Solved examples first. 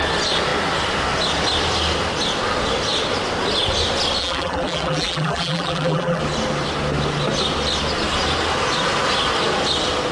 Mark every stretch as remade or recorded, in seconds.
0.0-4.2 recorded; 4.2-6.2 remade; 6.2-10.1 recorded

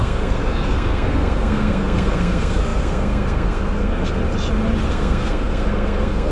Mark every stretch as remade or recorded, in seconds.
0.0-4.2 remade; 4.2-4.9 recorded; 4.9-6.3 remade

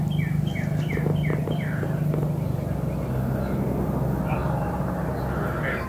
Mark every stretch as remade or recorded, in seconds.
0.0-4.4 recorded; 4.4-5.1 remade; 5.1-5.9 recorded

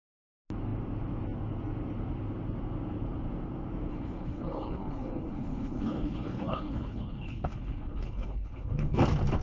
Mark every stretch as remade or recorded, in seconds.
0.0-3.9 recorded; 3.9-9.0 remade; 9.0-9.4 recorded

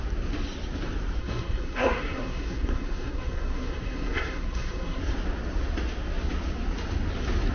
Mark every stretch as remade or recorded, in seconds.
0.0-1.2 recorded; 1.2-5.0 remade; 5.0-7.5 recorded

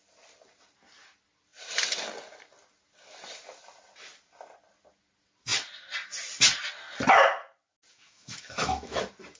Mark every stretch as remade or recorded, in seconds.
0.0-7.9 recorded; 7.9-9.0 remade; 9.0-9.4 recorded